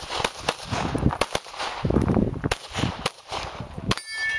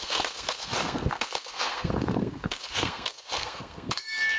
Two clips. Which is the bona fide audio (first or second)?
first